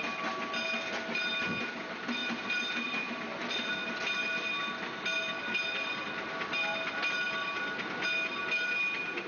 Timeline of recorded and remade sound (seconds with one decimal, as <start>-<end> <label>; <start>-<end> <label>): 0.0-9.3 recorded